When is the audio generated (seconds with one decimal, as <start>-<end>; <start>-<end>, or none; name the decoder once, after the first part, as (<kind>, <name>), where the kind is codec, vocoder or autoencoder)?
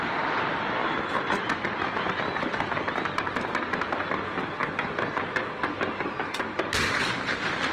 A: none